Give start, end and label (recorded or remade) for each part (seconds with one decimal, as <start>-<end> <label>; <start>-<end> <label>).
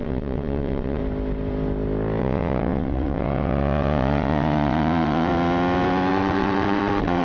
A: 0.0-1.0 remade; 1.0-2.2 recorded; 2.2-5.3 remade; 5.3-6.1 recorded; 6.1-7.2 remade